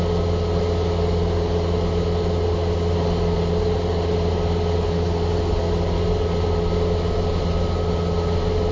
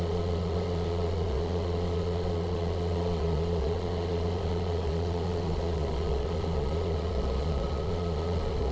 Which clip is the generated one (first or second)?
second